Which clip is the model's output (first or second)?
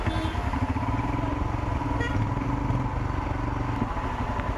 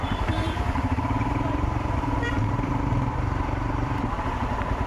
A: second